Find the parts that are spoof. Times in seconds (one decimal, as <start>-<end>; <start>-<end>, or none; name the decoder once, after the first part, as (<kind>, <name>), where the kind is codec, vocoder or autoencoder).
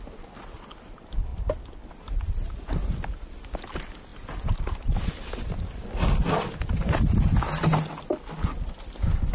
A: none